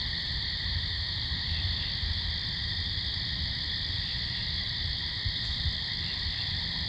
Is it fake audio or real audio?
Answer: fake